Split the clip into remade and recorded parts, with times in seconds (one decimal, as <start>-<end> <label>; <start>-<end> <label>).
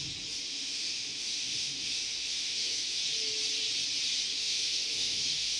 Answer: 0.0-0.5 recorded; 0.5-3.0 remade; 3.0-4.3 recorded; 4.3-5.6 remade